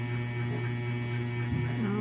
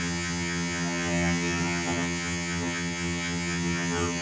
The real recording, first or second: first